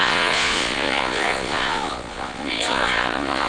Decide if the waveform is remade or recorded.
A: remade